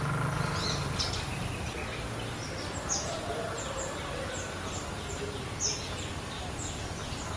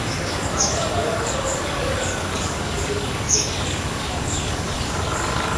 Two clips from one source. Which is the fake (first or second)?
second